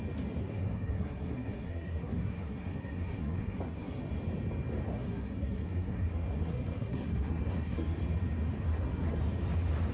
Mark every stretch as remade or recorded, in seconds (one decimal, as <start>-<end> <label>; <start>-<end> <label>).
0.0-0.4 recorded; 0.4-4.0 remade; 4.0-4.9 recorded; 4.9-8.0 remade; 8.0-8.7 recorded; 8.7-9.2 remade; 9.2-9.9 recorded